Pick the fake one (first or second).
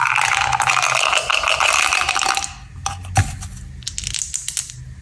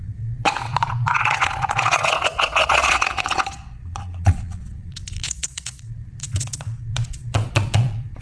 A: second